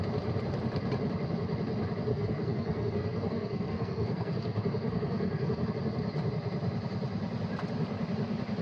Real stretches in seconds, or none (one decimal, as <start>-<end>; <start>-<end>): 0.0-2.1; 5.7-8.6